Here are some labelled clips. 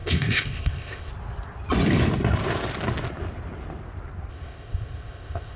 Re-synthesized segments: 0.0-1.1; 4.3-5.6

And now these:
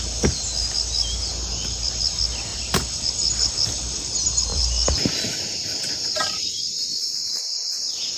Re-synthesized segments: 2.5-4.0; 4.5-5.1

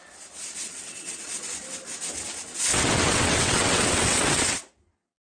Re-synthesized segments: 0.7-1.2; 2.7-4.6

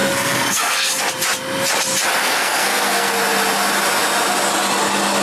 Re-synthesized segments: 0.0-1.0; 2.2-3.1